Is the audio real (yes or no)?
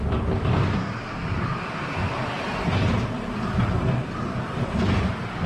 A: no